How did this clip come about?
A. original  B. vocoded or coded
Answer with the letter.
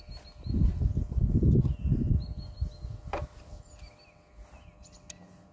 A